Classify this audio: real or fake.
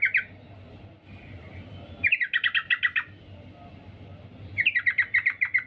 real